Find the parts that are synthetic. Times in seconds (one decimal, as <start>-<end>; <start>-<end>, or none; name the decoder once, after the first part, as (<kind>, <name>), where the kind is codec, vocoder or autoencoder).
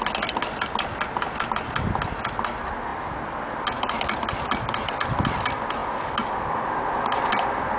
none